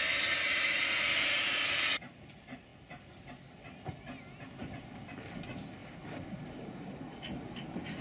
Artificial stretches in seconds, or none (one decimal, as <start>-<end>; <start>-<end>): none